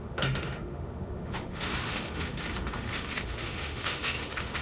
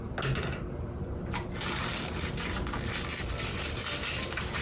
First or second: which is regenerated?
first